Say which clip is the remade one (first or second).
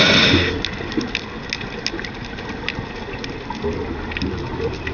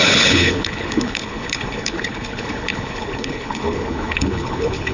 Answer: second